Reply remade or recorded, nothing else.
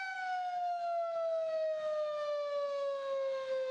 remade